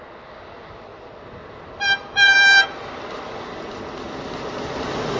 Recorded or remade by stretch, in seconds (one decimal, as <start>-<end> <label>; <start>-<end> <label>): 0.0-5.2 remade